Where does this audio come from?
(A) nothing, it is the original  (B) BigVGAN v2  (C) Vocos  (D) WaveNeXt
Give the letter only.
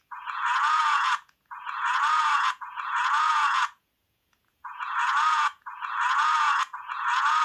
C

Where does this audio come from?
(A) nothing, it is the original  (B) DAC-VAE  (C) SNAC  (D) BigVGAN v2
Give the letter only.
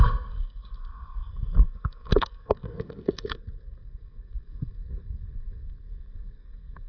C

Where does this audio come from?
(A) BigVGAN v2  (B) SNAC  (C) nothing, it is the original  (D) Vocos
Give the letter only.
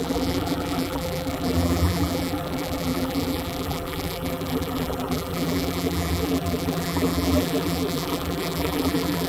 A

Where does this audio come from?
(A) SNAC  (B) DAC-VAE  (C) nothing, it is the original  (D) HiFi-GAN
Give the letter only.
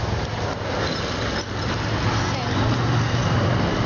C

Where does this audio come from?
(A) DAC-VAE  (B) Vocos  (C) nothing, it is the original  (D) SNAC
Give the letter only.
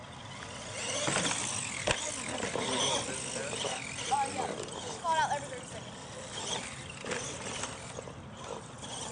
C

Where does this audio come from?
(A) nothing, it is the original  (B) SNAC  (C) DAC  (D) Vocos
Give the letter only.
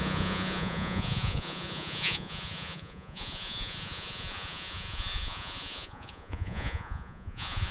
D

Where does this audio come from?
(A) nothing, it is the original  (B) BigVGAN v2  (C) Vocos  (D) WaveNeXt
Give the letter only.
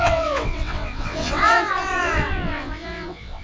D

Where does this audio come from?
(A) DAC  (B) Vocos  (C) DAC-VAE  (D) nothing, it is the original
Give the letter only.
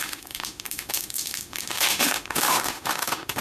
C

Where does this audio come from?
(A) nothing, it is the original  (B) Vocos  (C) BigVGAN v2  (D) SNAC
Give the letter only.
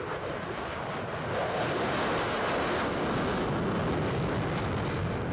A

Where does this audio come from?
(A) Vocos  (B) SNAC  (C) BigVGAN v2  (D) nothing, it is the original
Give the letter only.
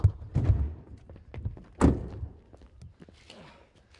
D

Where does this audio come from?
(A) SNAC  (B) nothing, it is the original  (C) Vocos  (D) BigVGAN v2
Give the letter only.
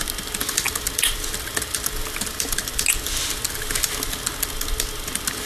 B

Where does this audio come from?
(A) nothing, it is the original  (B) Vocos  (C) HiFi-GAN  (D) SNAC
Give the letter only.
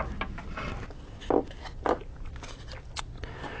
A